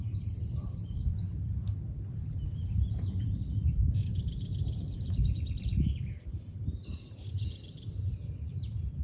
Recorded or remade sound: remade